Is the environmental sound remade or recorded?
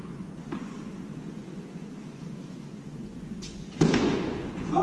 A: remade